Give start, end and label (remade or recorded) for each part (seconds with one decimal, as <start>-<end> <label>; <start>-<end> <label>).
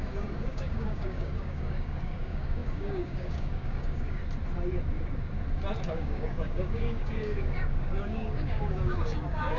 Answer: 0.0-4.2 remade; 4.2-5.8 recorded; 5.8-9.6 remade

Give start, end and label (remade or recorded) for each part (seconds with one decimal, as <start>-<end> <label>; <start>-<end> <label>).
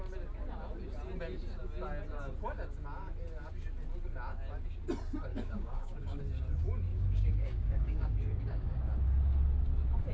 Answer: 0.0-5.3 recorded; 5.3-6.2 remade; 6.2-6.9 recorded; 6.9-8.8 remade; 8.8-10.1 recorded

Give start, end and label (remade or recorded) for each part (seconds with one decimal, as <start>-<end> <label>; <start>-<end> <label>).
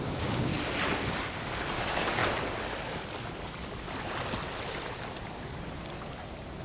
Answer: 0.0-0.5 remade; 0.5-1.7 recorded; 1.7-2.2 remade; 2.2-6.6 recorded